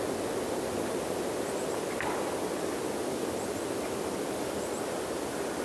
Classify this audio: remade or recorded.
recorded